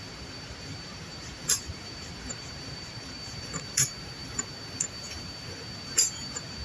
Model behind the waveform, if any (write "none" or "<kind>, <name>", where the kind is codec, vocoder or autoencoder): vocoder, BigVGAN v2